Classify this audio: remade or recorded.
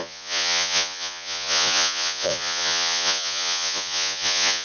remade